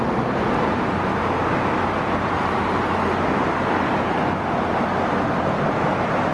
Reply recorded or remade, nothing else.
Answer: recorded